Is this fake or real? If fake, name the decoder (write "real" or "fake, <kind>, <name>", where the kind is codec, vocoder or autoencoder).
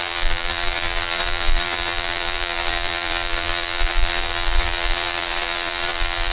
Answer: fake, vocoder, BigVGAN v2